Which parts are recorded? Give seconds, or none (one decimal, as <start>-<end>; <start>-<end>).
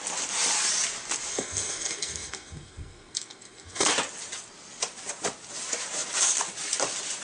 0.0-1.3; 3.9-7.2